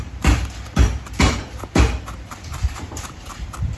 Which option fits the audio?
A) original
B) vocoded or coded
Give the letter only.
B